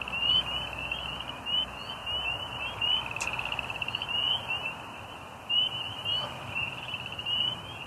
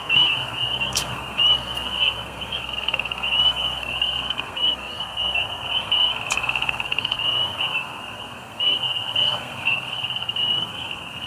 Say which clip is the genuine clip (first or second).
first